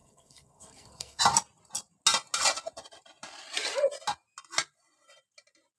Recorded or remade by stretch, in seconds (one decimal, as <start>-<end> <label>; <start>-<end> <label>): 0.0-1.2 remade; 1.2-5.8 recorded